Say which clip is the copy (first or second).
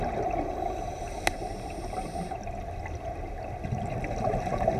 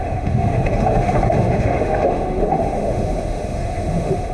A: second